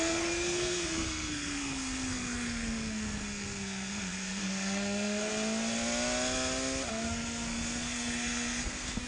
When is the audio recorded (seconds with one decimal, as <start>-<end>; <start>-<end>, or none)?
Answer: 5.3-6.9